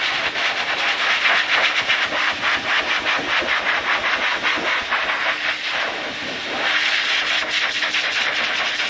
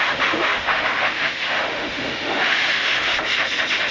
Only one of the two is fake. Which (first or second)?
second